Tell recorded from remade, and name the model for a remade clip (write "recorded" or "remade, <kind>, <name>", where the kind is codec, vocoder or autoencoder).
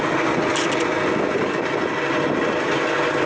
recorded